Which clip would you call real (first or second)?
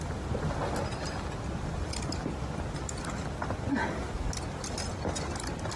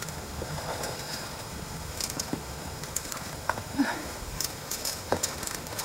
first